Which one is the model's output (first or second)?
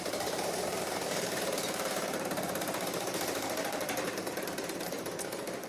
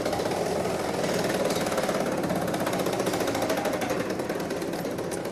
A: first